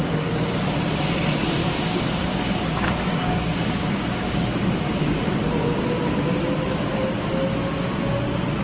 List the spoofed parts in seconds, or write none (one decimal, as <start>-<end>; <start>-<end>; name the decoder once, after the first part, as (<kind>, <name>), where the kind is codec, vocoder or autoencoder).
1.6-5.4 (codec, DAC)